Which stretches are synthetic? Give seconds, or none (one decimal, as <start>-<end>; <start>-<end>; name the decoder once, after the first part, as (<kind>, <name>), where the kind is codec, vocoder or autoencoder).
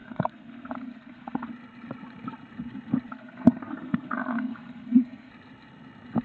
0.0-1.5 (codec, SNAC); 3.1-5.3